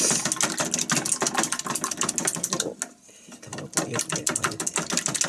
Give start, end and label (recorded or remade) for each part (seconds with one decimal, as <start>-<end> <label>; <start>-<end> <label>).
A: 0.0-5.3 recorded